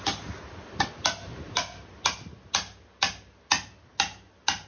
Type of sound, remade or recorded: recorded